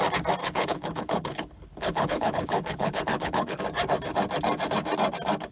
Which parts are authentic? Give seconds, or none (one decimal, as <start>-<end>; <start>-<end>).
0.0-0.4; 3.6-5.5